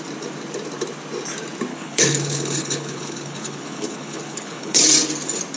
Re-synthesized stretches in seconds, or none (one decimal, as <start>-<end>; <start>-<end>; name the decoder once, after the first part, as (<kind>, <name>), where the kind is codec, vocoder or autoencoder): 1.7-4.8 (codec, HILCodec)